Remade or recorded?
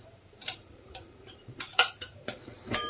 remade